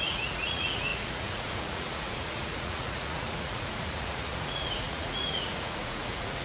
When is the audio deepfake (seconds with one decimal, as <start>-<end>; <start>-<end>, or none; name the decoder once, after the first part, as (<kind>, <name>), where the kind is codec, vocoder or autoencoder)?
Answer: 0.0-6.4 (vocoder, Vocos)